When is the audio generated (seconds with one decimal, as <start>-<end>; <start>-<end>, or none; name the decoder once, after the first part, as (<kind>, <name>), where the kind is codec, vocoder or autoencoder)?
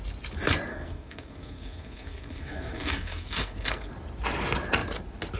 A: 0.7-3.9 (codec, SNAC)